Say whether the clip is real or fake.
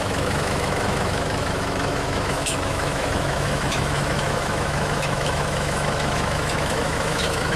fake